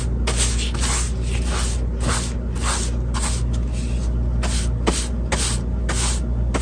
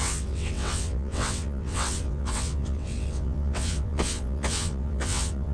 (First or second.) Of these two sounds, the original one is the first